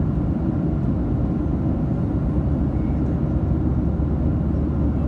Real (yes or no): yes